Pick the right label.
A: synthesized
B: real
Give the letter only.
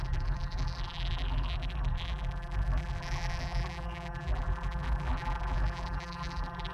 A